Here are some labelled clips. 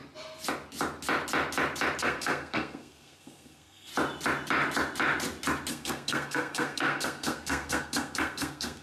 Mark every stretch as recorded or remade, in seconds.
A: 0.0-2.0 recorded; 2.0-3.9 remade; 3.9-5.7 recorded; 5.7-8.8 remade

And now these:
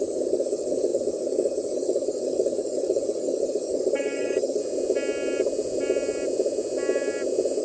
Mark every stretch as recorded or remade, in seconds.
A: 0.0-4.6 remade; 4.6-7.6 recorded

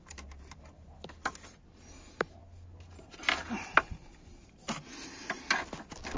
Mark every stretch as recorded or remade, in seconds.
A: 0.0-6.2 recorded

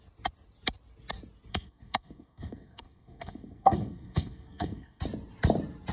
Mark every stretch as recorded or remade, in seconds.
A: 0.0-1.5 recorded; 1.5-5.0 remade; 5.0-5.9 recorded

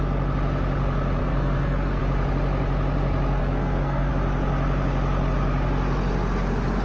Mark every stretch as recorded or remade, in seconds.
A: 0.0-1.2 recorded; 1.2-2.0 remade; 2.0-3.4 recorded; 3.4-4.1 remade; 4.1-6.8 recorded

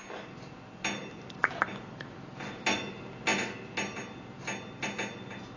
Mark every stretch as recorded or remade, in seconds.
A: 0.0-5.6 recorded

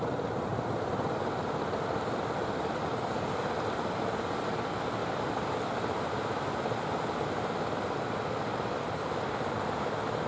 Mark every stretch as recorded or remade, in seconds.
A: 0.0-10.3 recorded

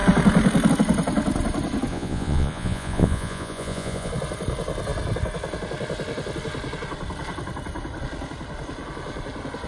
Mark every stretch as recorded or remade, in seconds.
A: 0.0-1.9 recorded; 1.9-4.1 remade; 4.1-9.7 recorded